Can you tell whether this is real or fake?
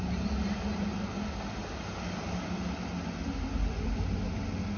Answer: real